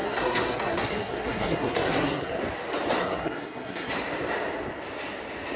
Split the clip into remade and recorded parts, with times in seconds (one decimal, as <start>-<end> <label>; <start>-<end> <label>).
0.0-2.4 remade; 2.4-3.0 recorded; 3.0-3.9 remade; 3.9-5.6 recorded